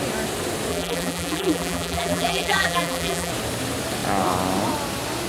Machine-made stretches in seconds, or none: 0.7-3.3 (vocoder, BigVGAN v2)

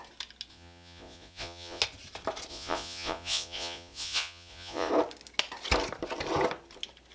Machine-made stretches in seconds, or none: 0.5-1.8 (vocoder, Vocos); 2.5-4.9

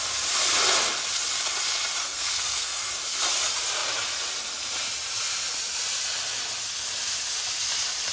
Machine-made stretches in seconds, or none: 2.0-2.9 (codec, SNAC)